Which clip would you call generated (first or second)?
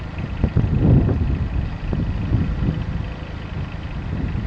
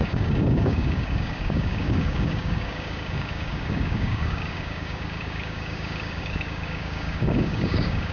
second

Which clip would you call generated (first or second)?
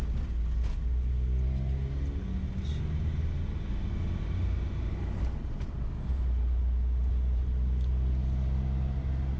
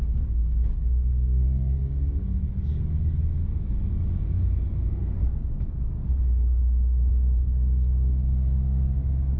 second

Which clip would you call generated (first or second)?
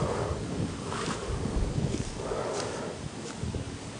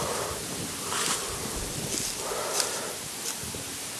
first